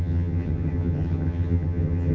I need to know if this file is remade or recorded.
remade